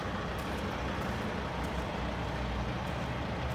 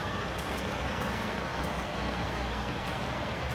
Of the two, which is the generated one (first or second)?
second